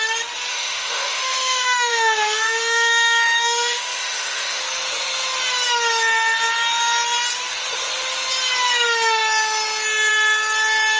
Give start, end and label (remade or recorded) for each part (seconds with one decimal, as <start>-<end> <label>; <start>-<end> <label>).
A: 0.0-0.5 recorded; 0.5-4.6 remade; 4.6-11.0 recorded